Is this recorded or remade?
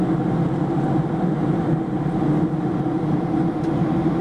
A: recorded